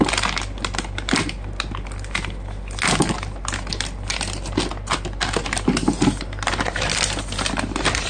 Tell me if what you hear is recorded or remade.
recorded